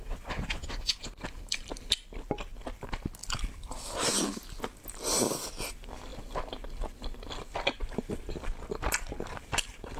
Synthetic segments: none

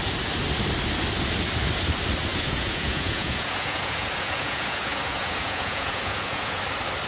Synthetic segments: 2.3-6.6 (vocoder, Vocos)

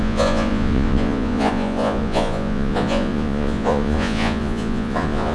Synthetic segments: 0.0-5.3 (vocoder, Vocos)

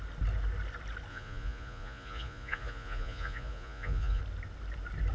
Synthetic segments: 1.1-4.2 (vocoder, Vocos)

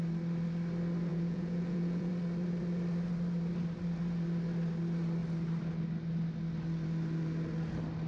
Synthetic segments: 1.1-2.1 (vocoder, Vocos)